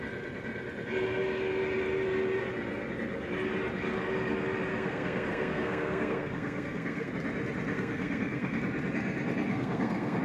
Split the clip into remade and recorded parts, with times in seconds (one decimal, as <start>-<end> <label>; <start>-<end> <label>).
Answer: 0.0-4.7 recorded; 4.7-7.1 remade; 7.1-7.7 recorded; 7.7-8.6 remade; 8.6-9.5 recorded; 9.5-10.2 remade